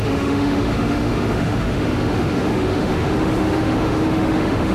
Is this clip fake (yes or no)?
yes